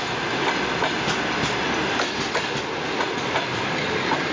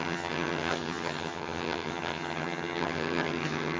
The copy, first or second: second